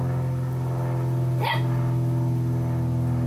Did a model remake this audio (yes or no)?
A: no